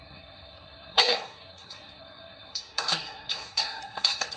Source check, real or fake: fake